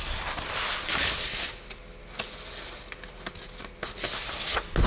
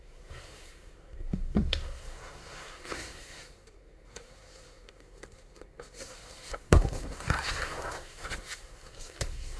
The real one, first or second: first